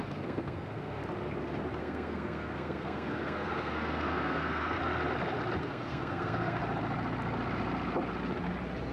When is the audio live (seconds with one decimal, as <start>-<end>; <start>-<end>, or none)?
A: 1.0-1.8; 4.8-5.6; 6.6-8.9